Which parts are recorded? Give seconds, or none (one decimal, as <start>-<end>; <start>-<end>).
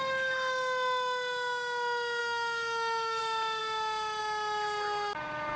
0.0-2.2; 3.2-5.6